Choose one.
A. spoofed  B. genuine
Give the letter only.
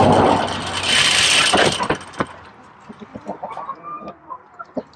B